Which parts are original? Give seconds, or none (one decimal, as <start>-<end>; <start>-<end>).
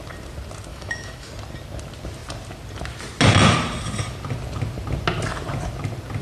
0.0-0.7; 1.3-6.2